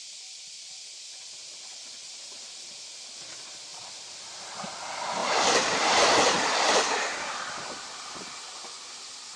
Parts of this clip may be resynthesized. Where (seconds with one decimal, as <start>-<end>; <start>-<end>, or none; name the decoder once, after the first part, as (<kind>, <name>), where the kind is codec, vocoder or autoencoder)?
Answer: none